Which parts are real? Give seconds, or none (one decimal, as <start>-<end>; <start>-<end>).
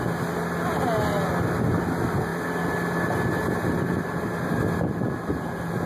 0.0-5.9